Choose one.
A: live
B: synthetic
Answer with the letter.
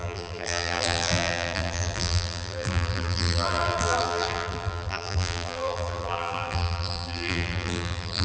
B